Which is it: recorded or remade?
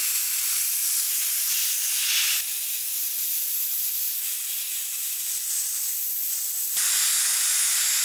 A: recorded